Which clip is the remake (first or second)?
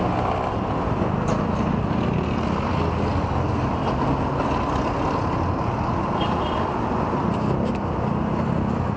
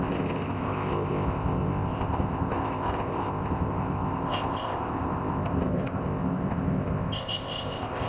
second